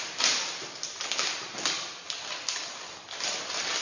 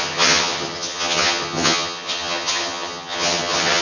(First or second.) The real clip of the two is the first